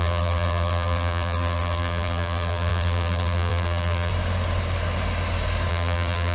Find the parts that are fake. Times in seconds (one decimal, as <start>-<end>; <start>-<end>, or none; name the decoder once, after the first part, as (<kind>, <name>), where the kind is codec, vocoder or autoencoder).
0.0-4.1 (vocoder, BigVGAN v2); 5.7-6.3